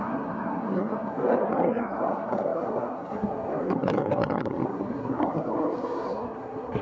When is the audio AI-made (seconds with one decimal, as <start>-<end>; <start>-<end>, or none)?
0.0-6.8